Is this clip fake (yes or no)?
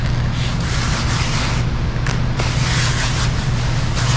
no